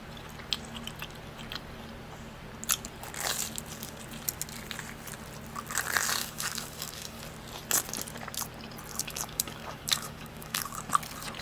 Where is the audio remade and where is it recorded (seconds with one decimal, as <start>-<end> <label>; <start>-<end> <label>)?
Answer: 0.0-6.2 recorded; 6.2-7.2 remade; 7.2-8.9 recorded; 8.9-10.9 remade; 10.9-11.4 recorded